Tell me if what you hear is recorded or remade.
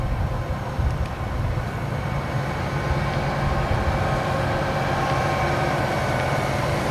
recorded